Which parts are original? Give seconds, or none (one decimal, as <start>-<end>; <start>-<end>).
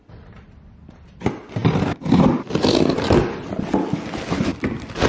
1.6-2.8; 4.5-5.1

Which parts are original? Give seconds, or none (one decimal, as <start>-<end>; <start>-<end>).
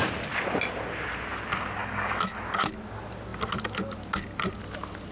0.0-1.8; 2.4-5.1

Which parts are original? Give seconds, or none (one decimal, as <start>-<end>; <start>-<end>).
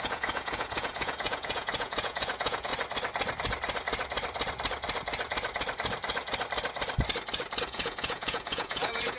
2.7-7.6